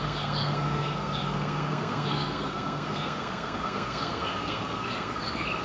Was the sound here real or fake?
fake